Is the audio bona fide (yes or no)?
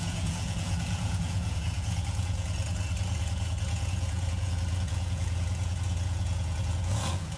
no